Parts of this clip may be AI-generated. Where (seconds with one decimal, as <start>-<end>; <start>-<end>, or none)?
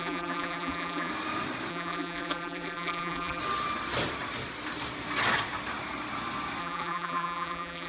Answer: 0.0-1.1; 1.7-3.4; 6.6-7.9